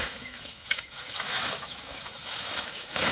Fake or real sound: fake